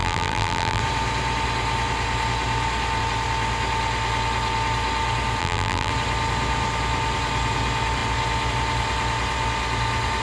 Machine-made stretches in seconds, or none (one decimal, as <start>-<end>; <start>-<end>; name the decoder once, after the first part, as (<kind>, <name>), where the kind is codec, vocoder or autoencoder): 0.0-0.8 (vocoder, BigVGAN v2); 5.4-5.9

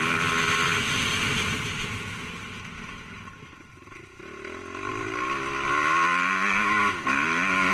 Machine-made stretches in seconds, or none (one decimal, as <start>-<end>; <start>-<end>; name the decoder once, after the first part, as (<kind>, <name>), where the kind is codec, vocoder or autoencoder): none

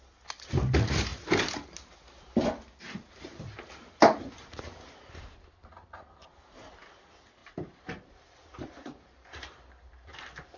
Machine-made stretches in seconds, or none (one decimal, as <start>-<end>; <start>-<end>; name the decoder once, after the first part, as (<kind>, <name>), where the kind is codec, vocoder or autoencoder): 7.4-10.6 (vocoder, BigVGAN v2)

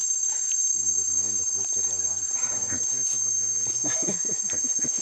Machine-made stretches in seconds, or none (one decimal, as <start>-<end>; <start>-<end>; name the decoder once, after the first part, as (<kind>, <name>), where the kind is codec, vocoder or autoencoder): 0.0-2.8 (vocoder, BigVGAN v2)

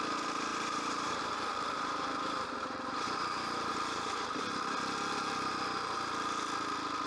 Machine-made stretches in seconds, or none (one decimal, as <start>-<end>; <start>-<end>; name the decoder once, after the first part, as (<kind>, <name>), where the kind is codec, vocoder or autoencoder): 0.5-4.4 (vocoder, BigVGAN v2)

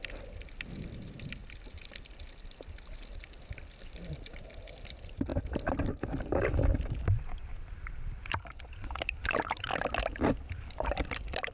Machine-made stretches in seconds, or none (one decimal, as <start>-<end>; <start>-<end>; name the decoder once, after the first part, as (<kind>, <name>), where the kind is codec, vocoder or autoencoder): 0.0-1.4 (vocoder, BigVGAN v2); 4.8-5.3; 7.7-9.7; 10.7-11.5